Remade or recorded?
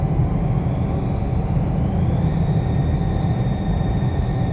recorded